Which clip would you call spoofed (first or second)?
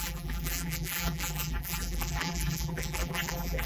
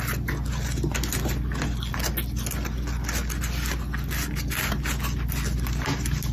first